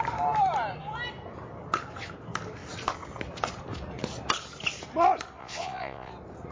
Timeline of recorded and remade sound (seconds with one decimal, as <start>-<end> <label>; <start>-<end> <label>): 0.0-5.4 recorded; 5.4-6.1 remade; 6.1-6.5 recorded